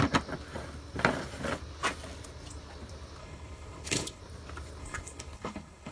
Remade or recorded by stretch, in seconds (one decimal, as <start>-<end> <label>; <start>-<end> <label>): 0.0-3.2 recorded; 3.2-4.2 remade; 4.2-4.8 recorded; 4.8-5.9 remade